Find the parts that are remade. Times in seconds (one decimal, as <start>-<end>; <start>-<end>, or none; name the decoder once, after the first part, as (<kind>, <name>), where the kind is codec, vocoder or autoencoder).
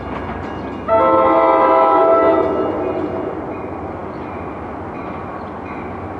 none